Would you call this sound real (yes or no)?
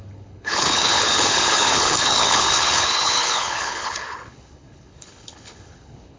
no